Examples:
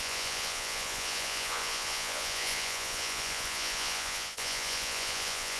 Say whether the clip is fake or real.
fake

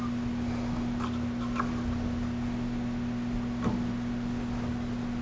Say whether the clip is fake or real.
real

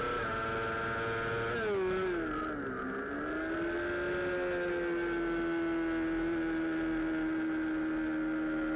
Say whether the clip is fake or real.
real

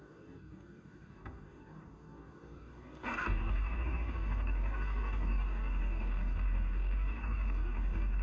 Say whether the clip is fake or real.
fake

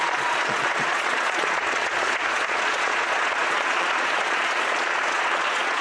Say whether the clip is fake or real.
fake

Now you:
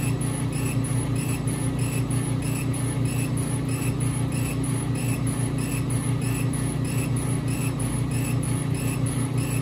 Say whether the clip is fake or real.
real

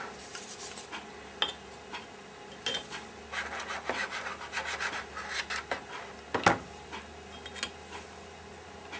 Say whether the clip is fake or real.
real